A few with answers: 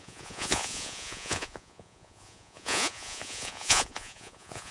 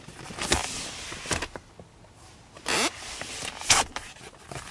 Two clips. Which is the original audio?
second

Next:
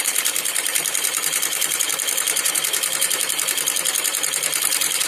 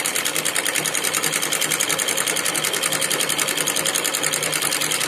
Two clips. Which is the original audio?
second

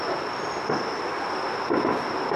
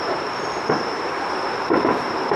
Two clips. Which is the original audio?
first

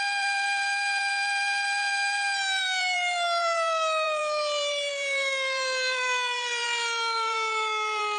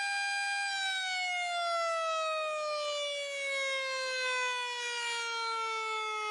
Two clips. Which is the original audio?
second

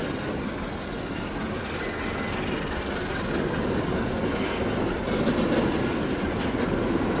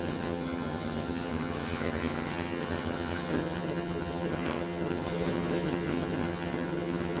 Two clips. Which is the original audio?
first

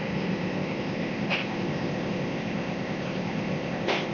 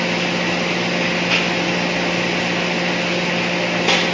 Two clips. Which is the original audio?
second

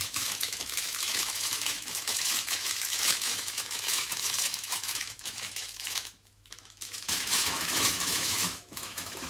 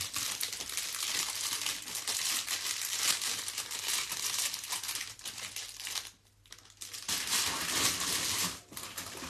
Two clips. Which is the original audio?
second